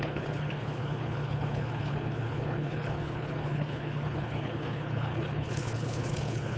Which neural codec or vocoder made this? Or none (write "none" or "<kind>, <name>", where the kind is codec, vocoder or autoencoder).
codec, HILCodec